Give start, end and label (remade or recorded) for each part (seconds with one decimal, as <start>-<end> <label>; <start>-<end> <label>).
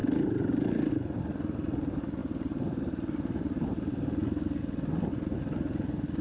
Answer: 0.0-0.9 remade; 0.9-2.2 recorded; 2.2-4.6 remade; 4.6-6.2 recorded